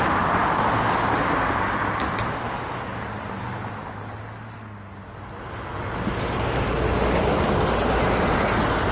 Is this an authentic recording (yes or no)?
yes